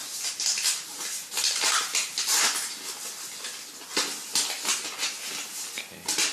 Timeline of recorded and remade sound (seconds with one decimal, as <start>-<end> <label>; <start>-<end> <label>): 0.0-6.3 recorded